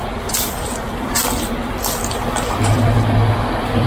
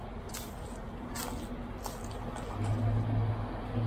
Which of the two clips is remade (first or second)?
first